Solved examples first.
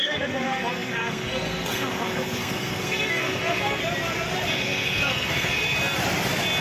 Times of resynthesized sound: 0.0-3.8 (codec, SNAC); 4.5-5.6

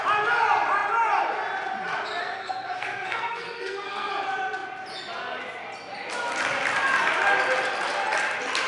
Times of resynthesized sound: 2.2-4.1 (codec, SNAC)

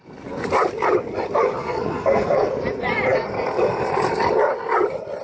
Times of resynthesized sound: 1.6-2.5 (codec, SNAC)

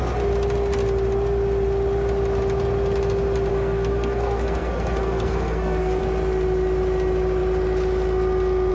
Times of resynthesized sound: 3.5-6.0 (codec, SNAC)